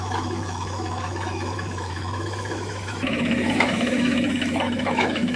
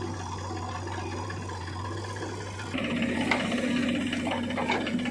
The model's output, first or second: first